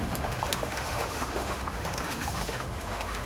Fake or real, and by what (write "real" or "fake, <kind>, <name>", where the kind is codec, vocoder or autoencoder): fake, autoencoder, DAC-VAE